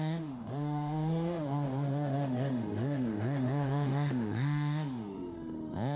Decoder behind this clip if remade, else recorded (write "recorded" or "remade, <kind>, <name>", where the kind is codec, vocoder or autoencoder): remade, autoencoder, DAC-VAE